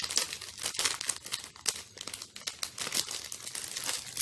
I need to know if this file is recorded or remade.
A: recorded